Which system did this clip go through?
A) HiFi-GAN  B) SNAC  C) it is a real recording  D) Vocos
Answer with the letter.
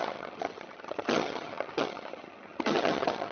A